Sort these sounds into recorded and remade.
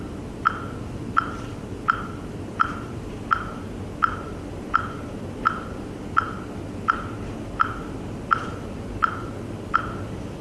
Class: recorded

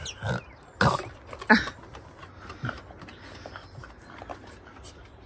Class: recorded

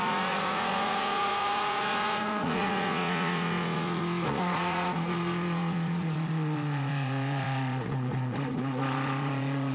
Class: remade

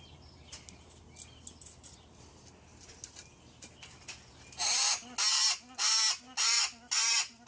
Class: recorded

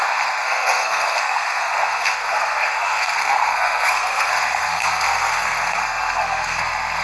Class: remade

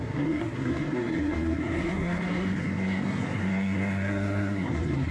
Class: remade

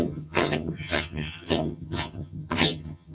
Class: remade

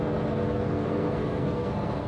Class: remade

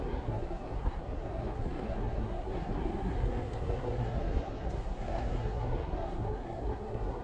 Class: remade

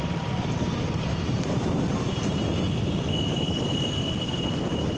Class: remade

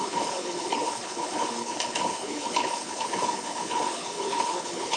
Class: remade